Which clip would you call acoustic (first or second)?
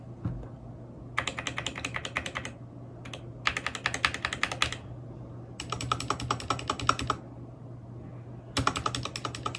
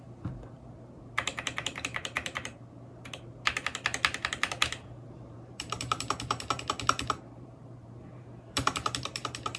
first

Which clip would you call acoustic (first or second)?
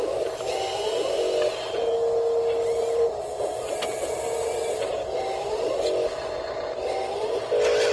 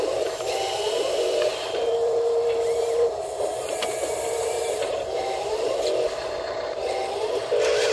first